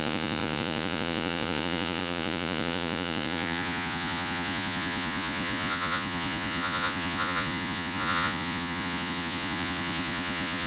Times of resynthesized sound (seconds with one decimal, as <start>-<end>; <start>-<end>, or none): 0.0-10.7